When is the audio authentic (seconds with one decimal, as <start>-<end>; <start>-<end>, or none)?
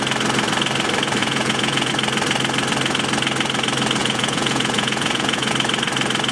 0.0-1.2; 1.9-4.0; 5.5-6.3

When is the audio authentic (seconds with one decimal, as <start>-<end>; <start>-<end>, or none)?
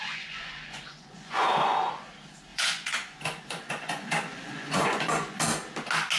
1.9-2.5; 5.4-6.2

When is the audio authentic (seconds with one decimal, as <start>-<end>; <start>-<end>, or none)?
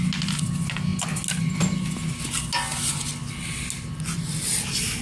0.0-5.0